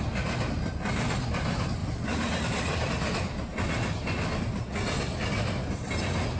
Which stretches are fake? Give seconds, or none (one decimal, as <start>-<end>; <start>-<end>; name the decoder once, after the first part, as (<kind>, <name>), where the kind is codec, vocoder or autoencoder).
none